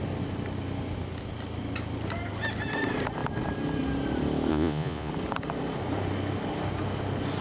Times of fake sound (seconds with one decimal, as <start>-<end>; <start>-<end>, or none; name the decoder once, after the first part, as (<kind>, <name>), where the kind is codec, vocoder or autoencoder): 4.5-5.1 (vocoder, Vocos)